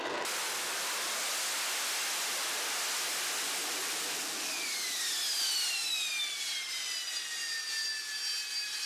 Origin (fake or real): real